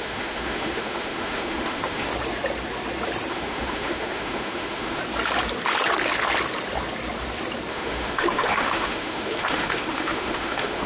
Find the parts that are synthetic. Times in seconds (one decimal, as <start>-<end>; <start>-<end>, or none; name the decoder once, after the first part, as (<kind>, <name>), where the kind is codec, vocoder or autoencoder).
0.0-2.1 (autoencoder, DAC-VAE); 3.3-5.0; 7.7-10.9